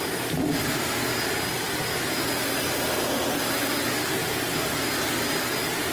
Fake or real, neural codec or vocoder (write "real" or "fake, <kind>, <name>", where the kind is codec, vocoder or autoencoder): real